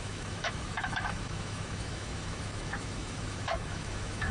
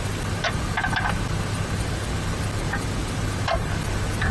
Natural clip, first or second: second